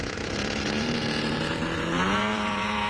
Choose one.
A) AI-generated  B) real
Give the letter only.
A